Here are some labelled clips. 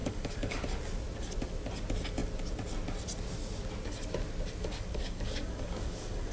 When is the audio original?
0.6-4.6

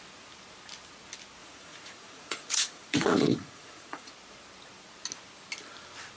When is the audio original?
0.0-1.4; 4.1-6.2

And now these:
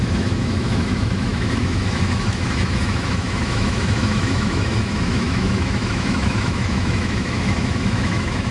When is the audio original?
none

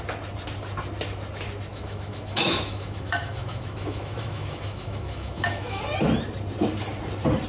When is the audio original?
0.0-1.7; 5.8-7.5

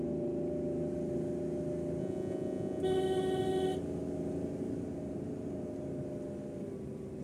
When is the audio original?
0.0-2.0; 2.8-7.2

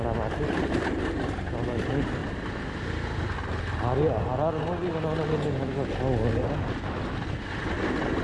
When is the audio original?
0.0-2.2; 3.2-8.2

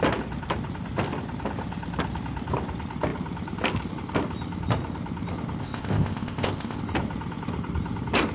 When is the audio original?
0.0-5.6; 6.8-8.3

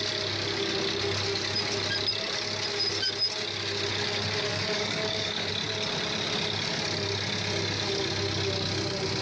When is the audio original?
0.0-4.5; 5.5-9.2